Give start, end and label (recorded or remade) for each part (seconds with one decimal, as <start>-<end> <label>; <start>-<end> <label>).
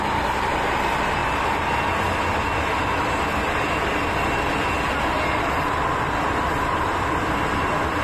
0.0-8.0 recorded